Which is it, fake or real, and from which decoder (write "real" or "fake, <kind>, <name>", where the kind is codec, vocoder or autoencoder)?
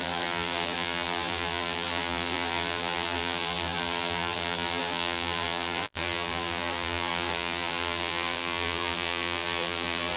fake, vocoder, BigVGAN v2